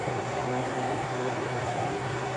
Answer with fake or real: fake